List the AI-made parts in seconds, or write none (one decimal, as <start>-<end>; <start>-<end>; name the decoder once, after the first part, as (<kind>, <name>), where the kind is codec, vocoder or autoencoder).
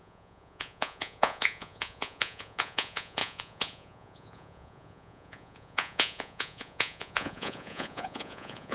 0.0-8.7 (vocoder, Vocos)